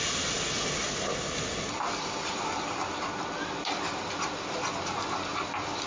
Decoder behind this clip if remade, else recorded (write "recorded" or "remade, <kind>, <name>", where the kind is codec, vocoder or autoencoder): recorded